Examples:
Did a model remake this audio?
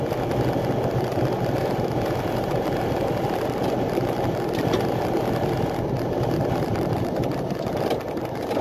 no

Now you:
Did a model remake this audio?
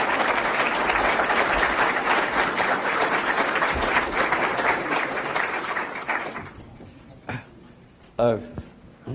yes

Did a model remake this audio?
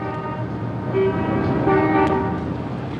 no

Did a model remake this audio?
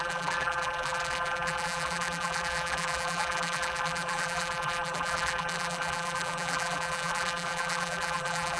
yes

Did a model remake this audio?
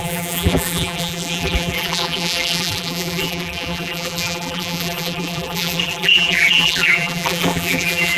yes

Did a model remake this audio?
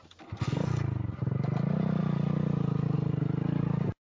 no